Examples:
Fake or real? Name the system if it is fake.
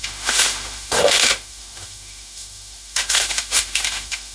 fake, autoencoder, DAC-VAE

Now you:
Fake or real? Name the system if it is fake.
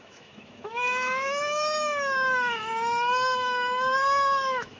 fake, autoencoder, DAC-VAE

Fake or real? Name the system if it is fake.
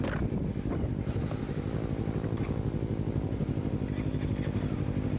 real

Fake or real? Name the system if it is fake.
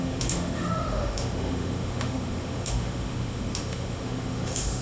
fake, autoencoder, DAC-VAE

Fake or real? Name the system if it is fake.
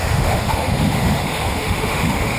fake, autoencoder, DAC-VAE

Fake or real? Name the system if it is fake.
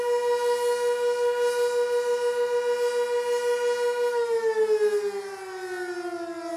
real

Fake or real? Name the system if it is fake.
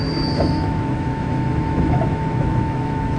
fake, autoencoder, DAC-VAE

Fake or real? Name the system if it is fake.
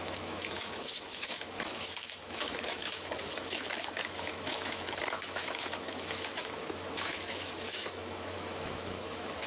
fake, autoencoder, DAC-VAE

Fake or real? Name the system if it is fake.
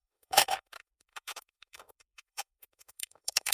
fake, autoencoder, DAC-VAE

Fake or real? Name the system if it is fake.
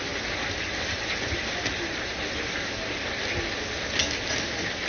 real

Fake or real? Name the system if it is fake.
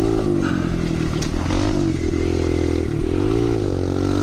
real